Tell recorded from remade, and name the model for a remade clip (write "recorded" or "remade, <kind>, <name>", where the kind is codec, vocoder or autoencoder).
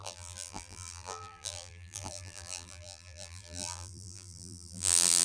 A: remade, vocoder, BigVGAN v2